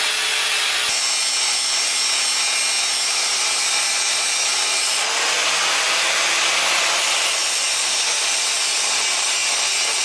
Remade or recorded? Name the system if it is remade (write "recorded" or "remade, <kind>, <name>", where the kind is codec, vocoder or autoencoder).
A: recorded